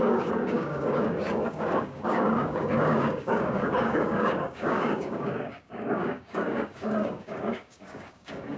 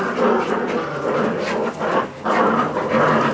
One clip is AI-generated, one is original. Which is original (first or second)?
second